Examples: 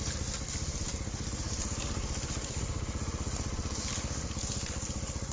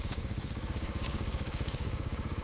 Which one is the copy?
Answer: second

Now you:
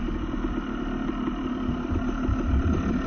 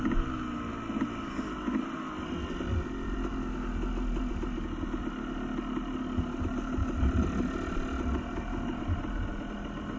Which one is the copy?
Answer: first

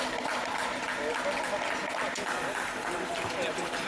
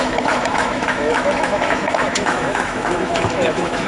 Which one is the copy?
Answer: second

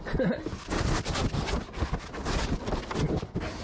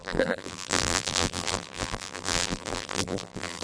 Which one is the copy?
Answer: second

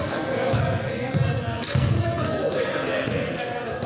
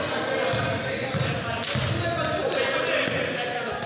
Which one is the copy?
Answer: first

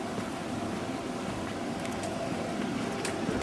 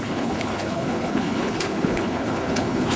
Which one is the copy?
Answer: second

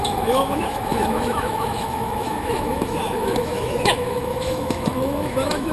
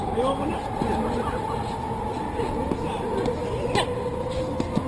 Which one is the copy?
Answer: first